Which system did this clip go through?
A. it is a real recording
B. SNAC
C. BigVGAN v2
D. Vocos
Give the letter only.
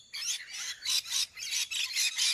A